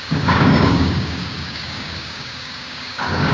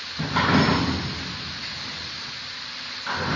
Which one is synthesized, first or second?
first